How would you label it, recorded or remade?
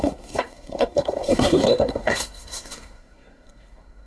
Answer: remade